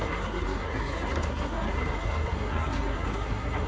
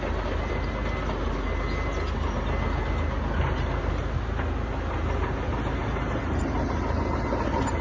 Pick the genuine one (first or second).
second